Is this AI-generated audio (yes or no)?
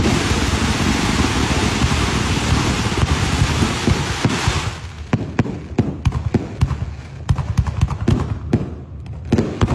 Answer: no